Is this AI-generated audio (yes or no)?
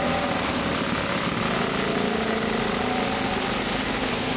no